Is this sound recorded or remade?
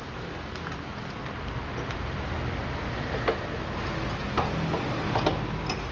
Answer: recorded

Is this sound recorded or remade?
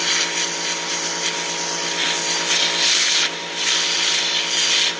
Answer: recorded